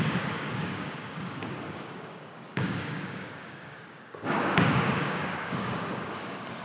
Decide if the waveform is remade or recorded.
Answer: remade